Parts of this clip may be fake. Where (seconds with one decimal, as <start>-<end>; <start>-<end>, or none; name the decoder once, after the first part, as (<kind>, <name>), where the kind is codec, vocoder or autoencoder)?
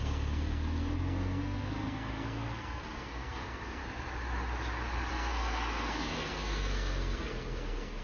0.0-3.8 (codec, SNAC); 5.1-8.0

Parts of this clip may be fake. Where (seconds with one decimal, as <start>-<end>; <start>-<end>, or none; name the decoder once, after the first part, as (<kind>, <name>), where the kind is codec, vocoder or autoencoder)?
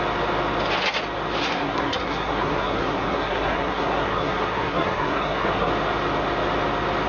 1.4-5.7 (codec, SNAC)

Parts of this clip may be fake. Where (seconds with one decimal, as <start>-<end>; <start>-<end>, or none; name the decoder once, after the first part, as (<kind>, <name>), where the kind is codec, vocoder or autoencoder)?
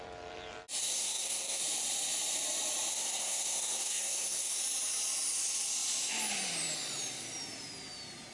0.8-1.6 (codec, SNAC); 2.9-4.6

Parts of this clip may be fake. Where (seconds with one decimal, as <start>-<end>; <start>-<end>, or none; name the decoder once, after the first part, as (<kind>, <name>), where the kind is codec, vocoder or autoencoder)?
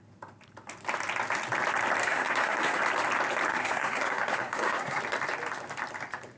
2.0-2.8 (codec, SNAC); 3.5-5.0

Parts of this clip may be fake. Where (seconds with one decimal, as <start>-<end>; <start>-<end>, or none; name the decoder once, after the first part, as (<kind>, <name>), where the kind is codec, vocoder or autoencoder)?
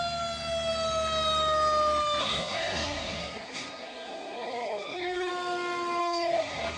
2.2-5.3 (codec, SNAC); 6.0-6.8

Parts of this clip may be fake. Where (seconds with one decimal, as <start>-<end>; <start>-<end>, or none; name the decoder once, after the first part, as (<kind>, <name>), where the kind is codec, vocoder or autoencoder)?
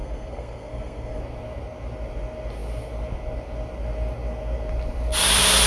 0.0-1.2 (codec, SNAC)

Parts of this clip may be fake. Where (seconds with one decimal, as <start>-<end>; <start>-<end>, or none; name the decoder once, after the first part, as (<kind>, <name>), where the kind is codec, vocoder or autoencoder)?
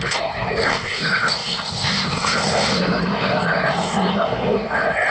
0.0-5.1 (codec, SNAC)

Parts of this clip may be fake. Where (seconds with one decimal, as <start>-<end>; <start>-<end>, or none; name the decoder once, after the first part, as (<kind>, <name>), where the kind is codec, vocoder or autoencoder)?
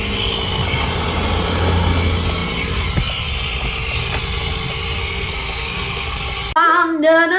5.0-6.2 (codec, SNAC)